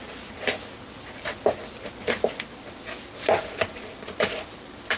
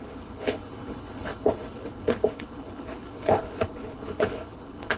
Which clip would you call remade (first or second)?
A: second